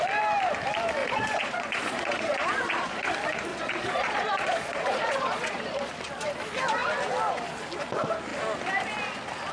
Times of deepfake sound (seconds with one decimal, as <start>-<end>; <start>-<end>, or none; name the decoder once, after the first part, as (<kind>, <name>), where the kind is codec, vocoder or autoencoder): 1.0-3.1 (vocoder, Vocos); 3.5-5.9